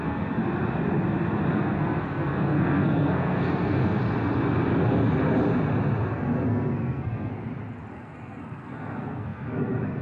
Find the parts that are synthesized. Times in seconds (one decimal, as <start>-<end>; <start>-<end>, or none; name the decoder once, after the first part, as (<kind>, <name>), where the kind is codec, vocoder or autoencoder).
0.0-0.4 (codec, SNAC); 1.5-4.0; 6.1-7.3; 7.9-10.0